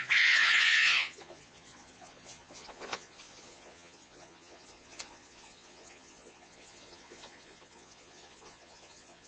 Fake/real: fake